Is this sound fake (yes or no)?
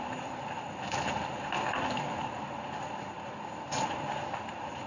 yes